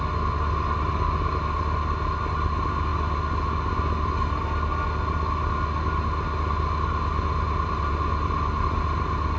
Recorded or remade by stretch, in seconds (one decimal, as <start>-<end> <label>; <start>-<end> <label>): 0.0-9.4 recorded